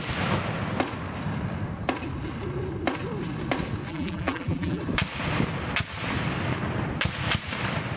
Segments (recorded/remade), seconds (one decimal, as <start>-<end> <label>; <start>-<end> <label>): 0.0-3.9 recorded; 3.9-4.8 remade; 4.8-8.0 recorded